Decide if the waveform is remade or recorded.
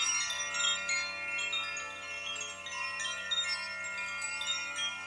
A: recorded